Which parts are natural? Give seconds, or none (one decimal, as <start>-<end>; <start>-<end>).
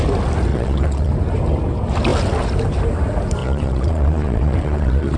0.0-0.5; 1.1-3.4